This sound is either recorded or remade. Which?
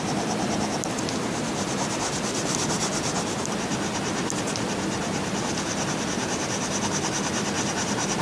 recorded